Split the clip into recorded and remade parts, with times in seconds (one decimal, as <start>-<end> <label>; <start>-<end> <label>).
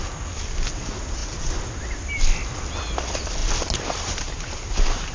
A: 0.0-5.1 recorded